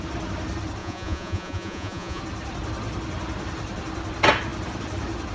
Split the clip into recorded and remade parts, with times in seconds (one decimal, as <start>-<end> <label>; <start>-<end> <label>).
0.0-0.8 recorded; 0.8-2.2 remade; 2.2-5.3 recorded